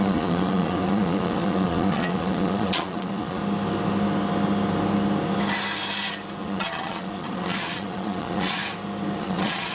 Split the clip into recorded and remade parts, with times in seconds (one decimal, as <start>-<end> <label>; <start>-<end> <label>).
0.0-3.4 remade; 3.4-6.4 recorded; 6.4-8.6 remade; 8.6-9.2 recorded; 9.2-9.7 remade